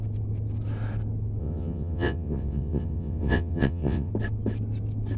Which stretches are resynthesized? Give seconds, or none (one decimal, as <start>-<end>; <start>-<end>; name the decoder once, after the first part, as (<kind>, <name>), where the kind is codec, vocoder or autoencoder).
1.4-4.1 (vocoder, WaveNeXt)